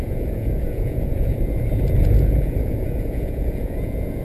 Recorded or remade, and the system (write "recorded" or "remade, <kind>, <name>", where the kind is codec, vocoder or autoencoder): remade, vocoder, Vocos